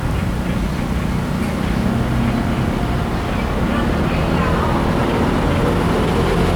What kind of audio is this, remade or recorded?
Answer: recorded